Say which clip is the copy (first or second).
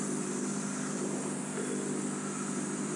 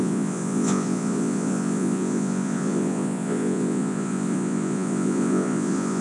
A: second